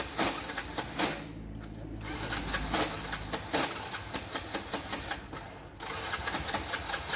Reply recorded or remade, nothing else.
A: recorded